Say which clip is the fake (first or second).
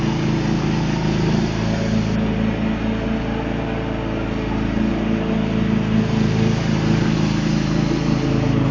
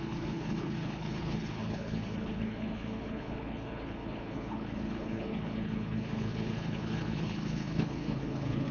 second